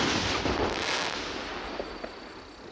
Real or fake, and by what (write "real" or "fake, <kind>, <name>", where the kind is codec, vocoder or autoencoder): real